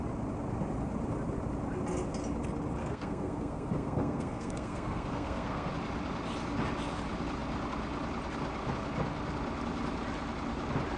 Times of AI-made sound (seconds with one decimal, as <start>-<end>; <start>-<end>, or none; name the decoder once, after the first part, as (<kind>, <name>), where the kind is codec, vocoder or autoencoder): 2.8-5.7 (codec, SNAC)